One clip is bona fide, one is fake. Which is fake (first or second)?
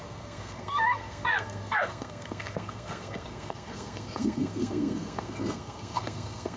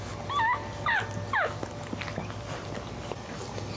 first